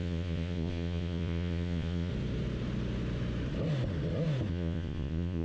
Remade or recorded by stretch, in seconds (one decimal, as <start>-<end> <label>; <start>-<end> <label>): 0.0-2.1 remade; 2.1-4.5 recorded; 4.5-5.4 remade